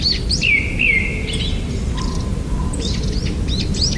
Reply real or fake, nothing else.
real